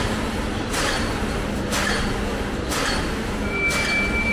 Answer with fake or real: real